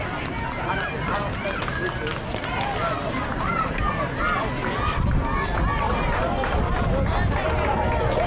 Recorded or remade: recorded